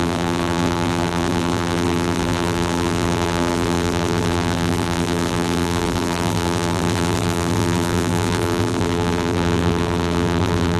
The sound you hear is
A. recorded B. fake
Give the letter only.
B